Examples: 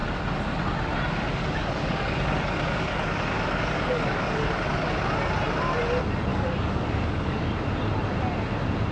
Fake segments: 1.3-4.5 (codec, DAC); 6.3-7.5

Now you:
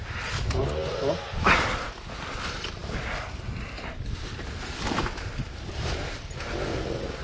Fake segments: none

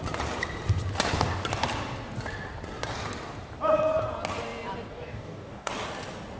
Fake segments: 4.9-5.7 (codec, DAC)

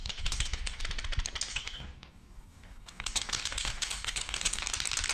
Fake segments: 0.0-0.8 (codec, DAC); 1.5-4.6

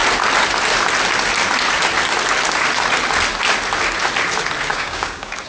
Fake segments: 4.7-5.5 (codec, DAC)

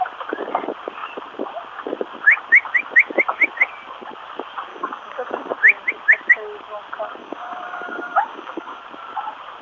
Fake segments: 4.7-5.5 (codec, DAC); 7.2-8.8

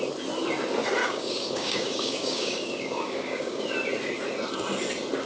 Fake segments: 1.0-3.6 (codec, DAC)